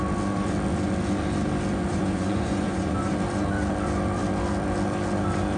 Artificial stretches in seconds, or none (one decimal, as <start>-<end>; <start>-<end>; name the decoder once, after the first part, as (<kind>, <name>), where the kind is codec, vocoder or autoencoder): 1.9-3.1 (vocoder, Vocos)